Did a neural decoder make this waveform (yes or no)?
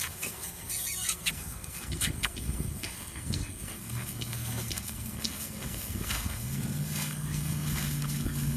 yes